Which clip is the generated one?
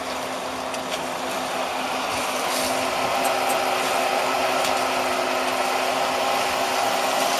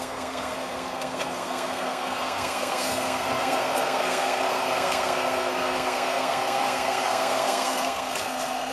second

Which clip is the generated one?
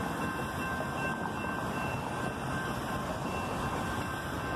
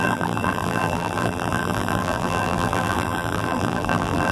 second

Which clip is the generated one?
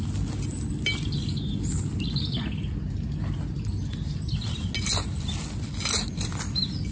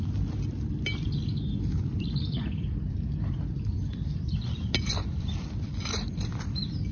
second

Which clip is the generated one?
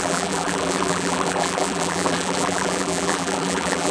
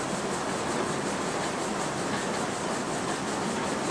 first